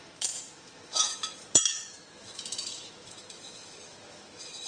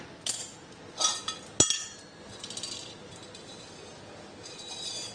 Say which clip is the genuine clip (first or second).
second